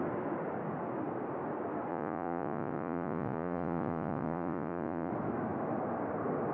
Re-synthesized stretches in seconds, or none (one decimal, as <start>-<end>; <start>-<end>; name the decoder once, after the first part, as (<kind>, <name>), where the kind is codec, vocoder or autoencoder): 1.9-5.1 (vocoder, Vocos)